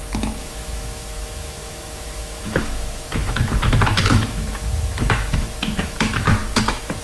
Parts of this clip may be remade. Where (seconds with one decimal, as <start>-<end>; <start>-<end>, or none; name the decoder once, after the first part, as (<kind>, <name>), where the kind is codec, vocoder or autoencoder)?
0.0-7.0 (autoencoder, DAC-VAE)

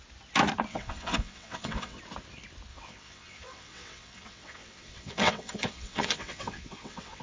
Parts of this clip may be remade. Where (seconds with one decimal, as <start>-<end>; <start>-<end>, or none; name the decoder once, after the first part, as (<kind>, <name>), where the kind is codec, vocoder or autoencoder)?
0.7-2.0 (vocoder, WaveNeXt); 2.7-7.2